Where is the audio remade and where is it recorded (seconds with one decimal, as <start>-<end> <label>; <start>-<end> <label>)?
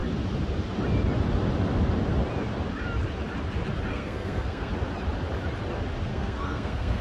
0.0-3.9 recorded; 3.9-4.7 remade; 4.7-6.1 recorded; 6.1-7.0 remade